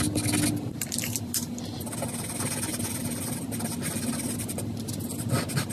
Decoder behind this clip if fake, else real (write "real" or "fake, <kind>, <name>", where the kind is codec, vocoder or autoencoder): real